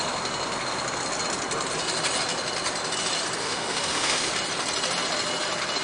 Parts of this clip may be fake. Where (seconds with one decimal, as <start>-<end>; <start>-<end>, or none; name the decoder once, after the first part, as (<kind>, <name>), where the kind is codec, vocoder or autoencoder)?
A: 3.4-4.3 (autoencoder, DAC-VAE)